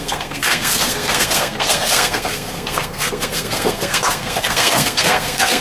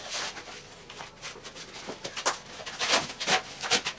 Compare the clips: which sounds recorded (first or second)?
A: second